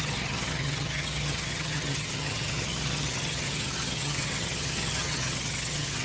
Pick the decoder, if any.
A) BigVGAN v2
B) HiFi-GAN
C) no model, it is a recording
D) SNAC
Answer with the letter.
B